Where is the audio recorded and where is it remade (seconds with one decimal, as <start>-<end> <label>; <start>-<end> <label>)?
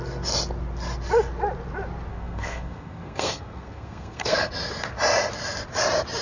0.0-2.1 recorded; 2.1-4.5 remade; 4.5-6.2 recorded